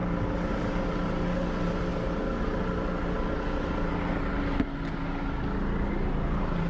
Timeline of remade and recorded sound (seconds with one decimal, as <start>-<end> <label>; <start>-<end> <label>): 0.0-6.7 recorded